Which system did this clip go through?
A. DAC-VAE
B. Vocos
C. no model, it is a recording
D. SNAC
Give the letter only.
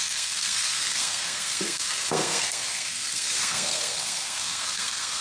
D